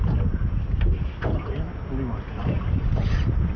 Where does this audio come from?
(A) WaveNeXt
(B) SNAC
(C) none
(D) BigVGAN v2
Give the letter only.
C